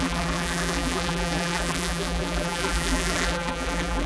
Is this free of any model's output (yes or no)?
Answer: no